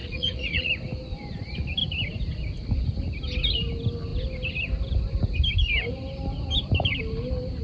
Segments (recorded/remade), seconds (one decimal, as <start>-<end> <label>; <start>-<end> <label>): 0.0-0.7 remade; 0.7-7.6 recorded